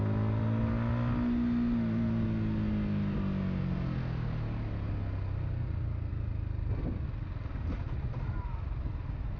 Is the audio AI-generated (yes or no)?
no